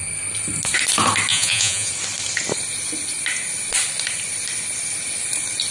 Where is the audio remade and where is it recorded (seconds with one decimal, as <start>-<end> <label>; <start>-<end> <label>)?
0.0-1.3 recorded; 1.3-1.9 remade; 1.9-5.7 recorded